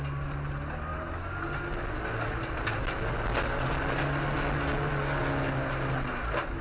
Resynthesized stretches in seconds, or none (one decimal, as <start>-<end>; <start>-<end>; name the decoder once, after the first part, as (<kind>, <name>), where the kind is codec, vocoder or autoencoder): none